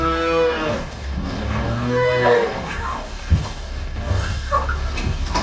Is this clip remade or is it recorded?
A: remade